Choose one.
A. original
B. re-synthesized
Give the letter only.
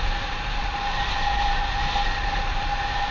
A